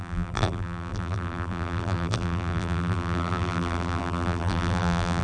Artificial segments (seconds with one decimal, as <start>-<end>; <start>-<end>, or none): 0.0-5.2